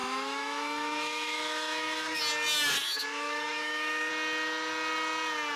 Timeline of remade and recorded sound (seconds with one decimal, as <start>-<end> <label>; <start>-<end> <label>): 0.0-2.2 remade; 2.2-2.8 recorded; 2.8-4.1 remade; 4.1-5.6 recorded